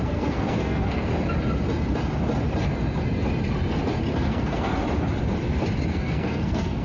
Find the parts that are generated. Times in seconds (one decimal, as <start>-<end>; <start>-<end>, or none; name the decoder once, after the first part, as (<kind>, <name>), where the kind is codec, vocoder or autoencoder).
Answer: 0.0-1.1 (codec, SNAC); 4.1-4.7; 5.9-6.8